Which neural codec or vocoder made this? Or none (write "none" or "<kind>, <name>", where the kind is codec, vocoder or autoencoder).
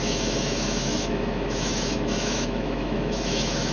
autoencoder, DAC-VAE